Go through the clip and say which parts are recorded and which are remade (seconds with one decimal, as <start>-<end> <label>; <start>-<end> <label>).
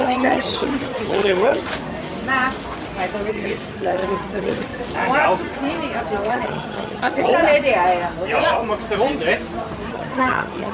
0.0-1.6 remade; 1.6-3.3 recorded; 3.3-4.7 remade; 4.7-6.3 recorded; 6.3-7.3 remade; 7.3-9.9 recorded; 9.9-10.7 remade